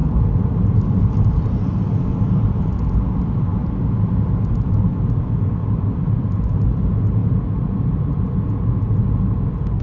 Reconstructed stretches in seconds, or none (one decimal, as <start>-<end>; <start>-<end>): 0.0-0.8